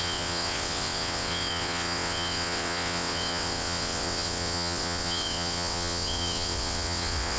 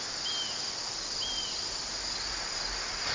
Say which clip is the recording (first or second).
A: second